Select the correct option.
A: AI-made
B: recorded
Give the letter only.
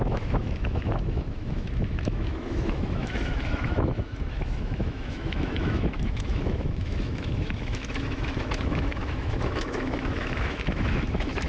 A